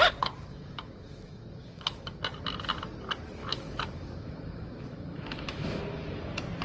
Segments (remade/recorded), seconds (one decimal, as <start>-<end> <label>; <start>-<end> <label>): 0.0-0.5 recorded; 0.5-2.2 remade; 2.2-3.4 recorded; 3.4-5.8 remade; 5.8-6.6 recorded